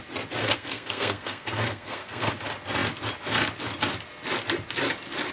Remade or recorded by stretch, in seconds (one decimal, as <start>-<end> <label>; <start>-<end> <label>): 0.0-0.4 recorded; 0.4-2.3 remade; 2.3-5.3 recorded